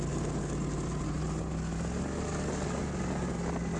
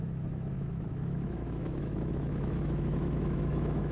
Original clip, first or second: first